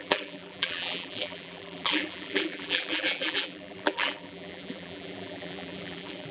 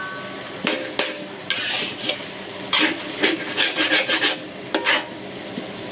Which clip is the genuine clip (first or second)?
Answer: second